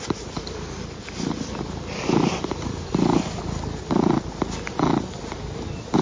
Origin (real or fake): real